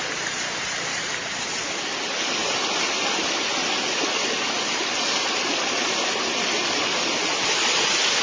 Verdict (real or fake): real